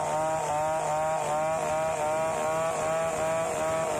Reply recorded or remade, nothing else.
recorded